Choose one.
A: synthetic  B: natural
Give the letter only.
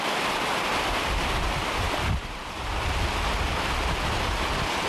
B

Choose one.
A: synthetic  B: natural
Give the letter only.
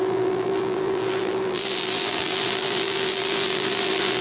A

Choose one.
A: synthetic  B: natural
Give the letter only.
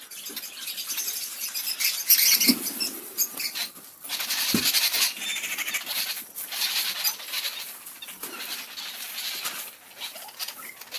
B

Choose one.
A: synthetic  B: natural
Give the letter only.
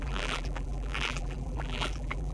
A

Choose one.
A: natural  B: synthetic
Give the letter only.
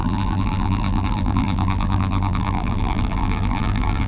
B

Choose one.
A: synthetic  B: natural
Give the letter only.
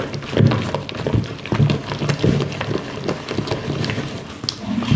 B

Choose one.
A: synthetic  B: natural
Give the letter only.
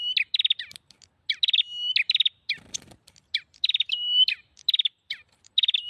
B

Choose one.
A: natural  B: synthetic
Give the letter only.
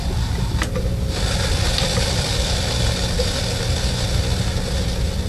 B